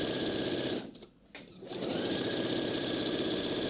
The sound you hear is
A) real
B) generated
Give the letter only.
A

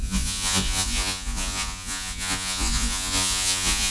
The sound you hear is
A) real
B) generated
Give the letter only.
B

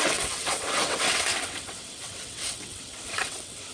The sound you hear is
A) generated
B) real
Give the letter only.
A